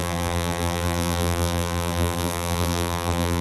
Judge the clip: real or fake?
fake